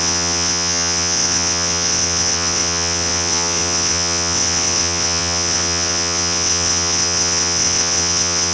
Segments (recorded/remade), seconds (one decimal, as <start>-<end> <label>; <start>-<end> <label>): 0.0-8.5 remade